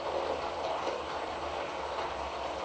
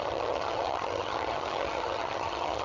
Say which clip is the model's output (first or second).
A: second